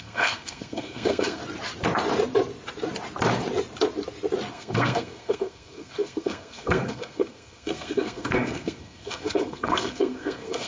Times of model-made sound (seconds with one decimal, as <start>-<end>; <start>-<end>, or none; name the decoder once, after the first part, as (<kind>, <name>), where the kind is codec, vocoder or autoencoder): 0.0-1.4 (codec, SNAC); 4.5-10.7